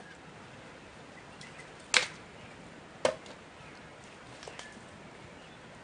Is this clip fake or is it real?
real